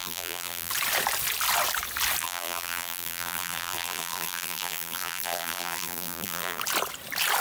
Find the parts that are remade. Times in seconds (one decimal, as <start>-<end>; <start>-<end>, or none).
0.0-0.7; 2.2-6.6